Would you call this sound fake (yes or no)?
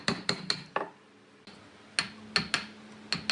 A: no